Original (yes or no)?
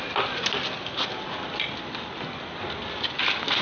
yes